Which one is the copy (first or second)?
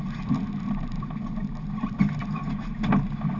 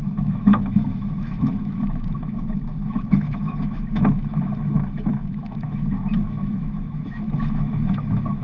second